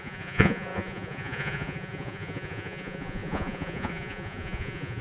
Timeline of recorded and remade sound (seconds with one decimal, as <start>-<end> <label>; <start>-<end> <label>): 0.0-5.0 remade